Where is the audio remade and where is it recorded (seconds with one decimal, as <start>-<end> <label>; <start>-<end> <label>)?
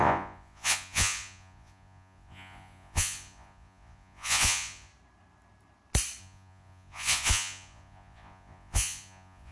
0.0-4.9 remade; 4.9-6.2 recorded; 6.2-9.5 remade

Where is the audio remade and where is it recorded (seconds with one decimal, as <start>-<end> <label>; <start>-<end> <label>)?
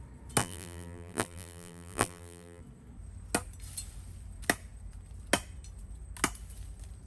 0.0-0.4 recorded; 0.4-2.6 remade; 2.6-7.1 recorded